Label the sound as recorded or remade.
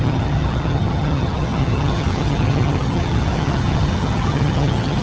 remade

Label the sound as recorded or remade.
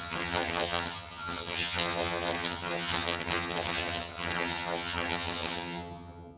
remade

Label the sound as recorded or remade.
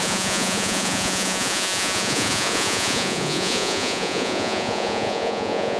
remade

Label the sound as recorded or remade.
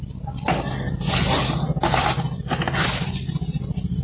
recorded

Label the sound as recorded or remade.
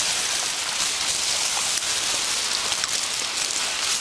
recorded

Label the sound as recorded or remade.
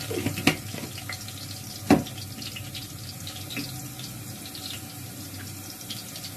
recorded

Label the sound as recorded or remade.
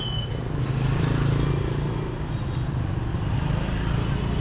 recorded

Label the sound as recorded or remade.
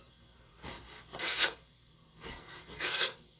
remade